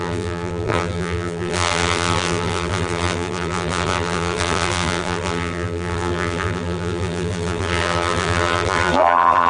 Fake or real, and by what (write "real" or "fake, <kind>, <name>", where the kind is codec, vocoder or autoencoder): fake, vocoder, BigVGAN v2